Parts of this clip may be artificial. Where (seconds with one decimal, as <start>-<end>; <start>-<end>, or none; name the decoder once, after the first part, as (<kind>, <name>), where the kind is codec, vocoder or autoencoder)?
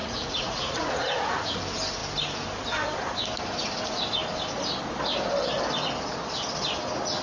0.0-1.6 (vocoder, Vocos)